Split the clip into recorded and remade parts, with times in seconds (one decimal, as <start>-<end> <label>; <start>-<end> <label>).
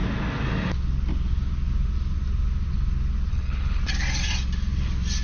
0.0-3.3 recorded; 3.3-3.8 remade; 3.8-5.2 recorded